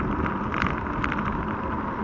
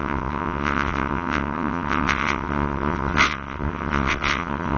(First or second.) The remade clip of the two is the second